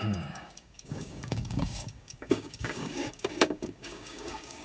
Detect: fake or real fake